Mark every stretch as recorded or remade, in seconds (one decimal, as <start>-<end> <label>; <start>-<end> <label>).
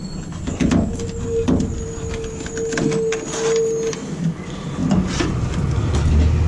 0.0-6.5 recorded